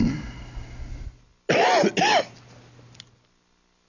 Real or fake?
real